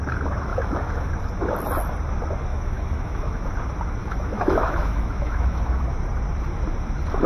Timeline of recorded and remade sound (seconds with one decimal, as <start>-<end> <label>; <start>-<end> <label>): 0.0-0.5 recorded; 0.5-1.1 remade; 1.1-2.5 recorded; 2.5-3.5 remade; 3.5-4.0 recorded; 4.0-5.8 remade; 5.8-7.3 recorded